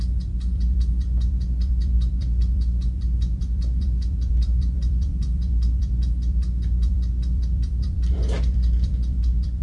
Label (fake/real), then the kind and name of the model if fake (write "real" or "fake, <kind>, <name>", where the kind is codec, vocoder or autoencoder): fake, vocoder, BigVGAN v2